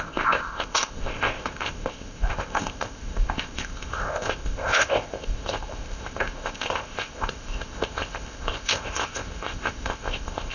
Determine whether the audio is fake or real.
fake